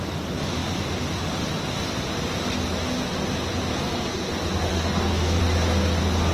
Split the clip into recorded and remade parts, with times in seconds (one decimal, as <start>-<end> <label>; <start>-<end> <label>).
0.0-3.7 recorded; 3.7-4.3 remade; 4.3-4.7 recorded; 4.7-5.4 remade; 5.4-6.3 recorded